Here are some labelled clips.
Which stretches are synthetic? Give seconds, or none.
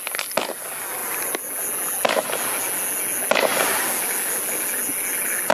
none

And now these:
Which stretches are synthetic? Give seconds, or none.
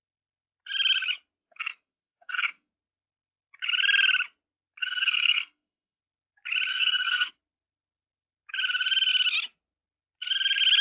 1.4-2.7 (codec, SNAC); 4.8-6.0; 6.7-7.3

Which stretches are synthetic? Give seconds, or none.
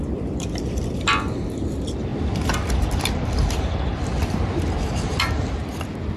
none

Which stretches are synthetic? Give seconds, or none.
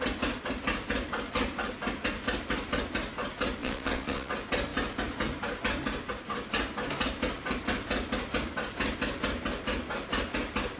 3.6-4.3 (vocoder, WaveNeXt)